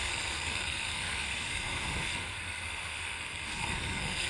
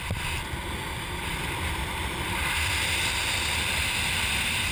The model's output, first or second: first